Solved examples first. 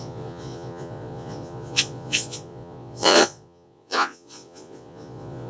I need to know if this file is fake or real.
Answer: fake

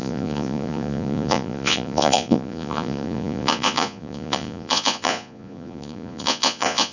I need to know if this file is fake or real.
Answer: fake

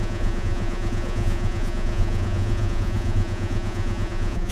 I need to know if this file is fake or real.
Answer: fake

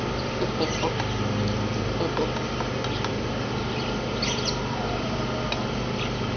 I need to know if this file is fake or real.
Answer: real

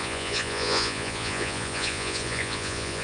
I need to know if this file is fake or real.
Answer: fake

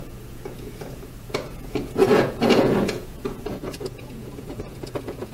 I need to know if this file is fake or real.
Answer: fake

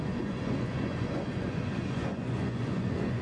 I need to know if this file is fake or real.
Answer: fake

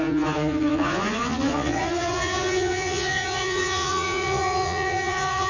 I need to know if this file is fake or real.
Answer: fake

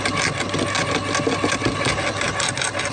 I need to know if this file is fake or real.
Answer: real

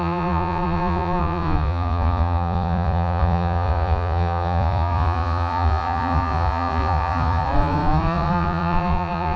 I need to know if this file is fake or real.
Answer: fake